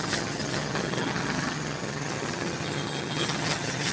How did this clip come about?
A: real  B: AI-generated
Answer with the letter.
B